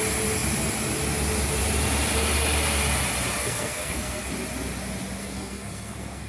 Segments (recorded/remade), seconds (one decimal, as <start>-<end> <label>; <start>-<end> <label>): 0.0-3.4 recorded; 3.4-4.3 remade; 4.3-5.2 recorded; 5.2-6.3 remade

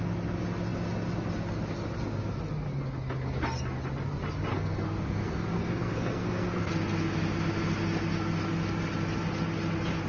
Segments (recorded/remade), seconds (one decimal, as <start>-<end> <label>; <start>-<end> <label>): 0.0-4.5 recorded; 4.5-6.7 remade; 6.7-10.1 recorded